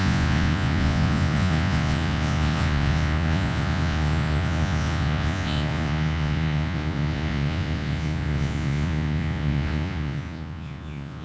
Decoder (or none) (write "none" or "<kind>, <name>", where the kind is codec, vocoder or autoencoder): vocoder, Vocos